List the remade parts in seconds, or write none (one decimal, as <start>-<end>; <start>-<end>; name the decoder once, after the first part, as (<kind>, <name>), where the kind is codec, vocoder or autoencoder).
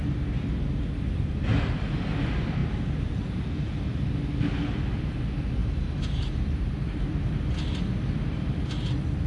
2.6-4.1 (vocoder, BigVGAN v2); 5.6-7.2